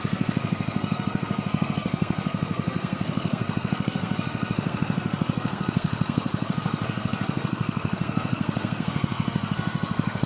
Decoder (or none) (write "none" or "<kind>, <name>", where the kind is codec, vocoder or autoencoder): codec, SNAC